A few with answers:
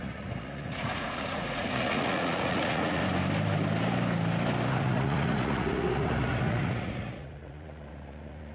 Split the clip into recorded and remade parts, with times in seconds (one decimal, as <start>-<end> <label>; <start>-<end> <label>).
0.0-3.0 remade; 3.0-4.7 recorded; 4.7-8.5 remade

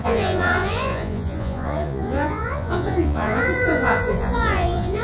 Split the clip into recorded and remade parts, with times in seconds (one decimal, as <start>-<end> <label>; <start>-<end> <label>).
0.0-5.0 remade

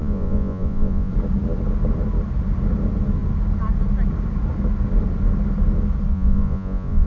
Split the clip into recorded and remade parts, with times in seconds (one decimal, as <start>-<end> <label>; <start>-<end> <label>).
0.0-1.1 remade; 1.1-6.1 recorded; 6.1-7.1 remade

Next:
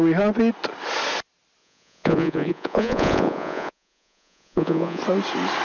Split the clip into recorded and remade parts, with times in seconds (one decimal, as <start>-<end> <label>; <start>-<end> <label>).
0.0-1.6 recorded; 1.6-5.0 remade; 5.0-5.6 recorded